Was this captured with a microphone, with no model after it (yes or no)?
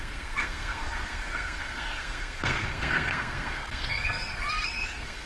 no